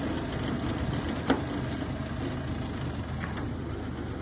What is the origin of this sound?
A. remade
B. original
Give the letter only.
B